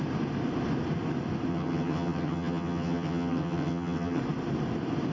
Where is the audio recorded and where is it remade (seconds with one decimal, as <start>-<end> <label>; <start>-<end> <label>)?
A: 0.0-1.5 recorded; 1.5-4.2 remade; 4.2-5.1 recorded